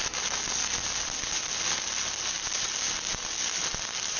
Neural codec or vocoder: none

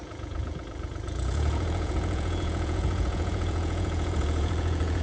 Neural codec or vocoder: vocoder, Vocos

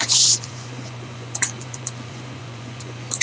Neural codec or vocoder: vocoder, Vocos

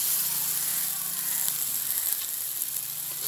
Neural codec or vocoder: none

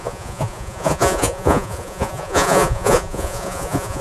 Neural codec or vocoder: vocoder, Vocos